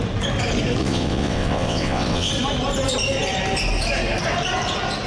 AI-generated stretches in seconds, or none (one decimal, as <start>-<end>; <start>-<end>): 0.8-2.3